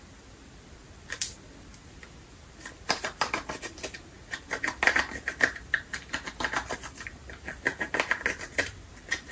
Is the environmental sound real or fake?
fake